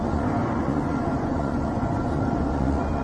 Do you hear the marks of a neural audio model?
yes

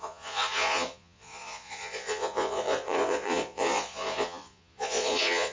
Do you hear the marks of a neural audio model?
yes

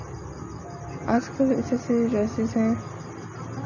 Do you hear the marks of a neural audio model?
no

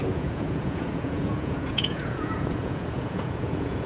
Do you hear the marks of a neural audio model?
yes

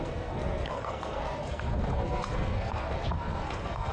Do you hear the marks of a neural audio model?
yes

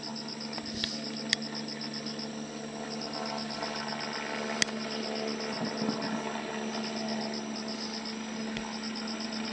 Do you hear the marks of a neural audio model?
no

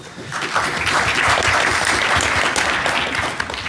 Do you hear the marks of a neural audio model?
no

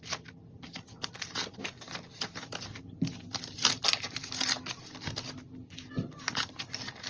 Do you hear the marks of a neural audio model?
no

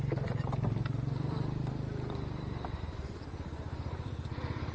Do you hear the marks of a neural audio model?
yes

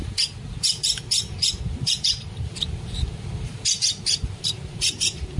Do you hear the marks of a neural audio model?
yes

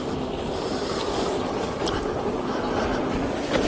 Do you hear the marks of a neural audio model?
no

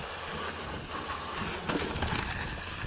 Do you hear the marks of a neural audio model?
no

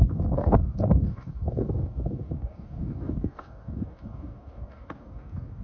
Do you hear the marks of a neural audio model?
yes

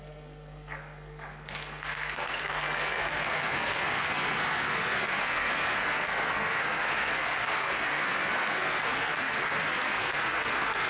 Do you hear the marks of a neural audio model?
yes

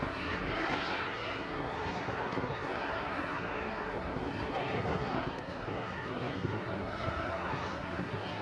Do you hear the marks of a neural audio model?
yes